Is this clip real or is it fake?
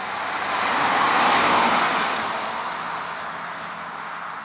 real